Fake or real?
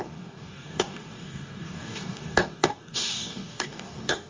fake